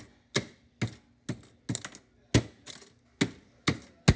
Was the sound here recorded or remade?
recorded